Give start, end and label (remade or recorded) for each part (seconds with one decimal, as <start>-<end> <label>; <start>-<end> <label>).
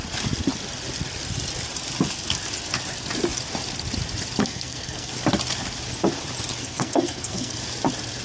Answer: 0.0-4.4 recorded; 4.4-5.1 remade; 5.1-6.6 recorded; 6.6-7.6 remade; 7.6-8.2 recorded